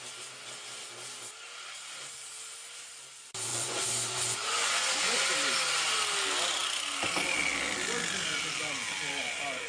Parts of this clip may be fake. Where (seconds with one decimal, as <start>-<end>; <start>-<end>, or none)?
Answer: 3.5-5.3